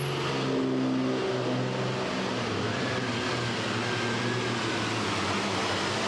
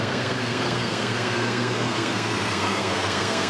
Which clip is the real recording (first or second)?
first